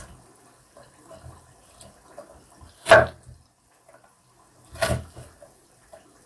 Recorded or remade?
recorded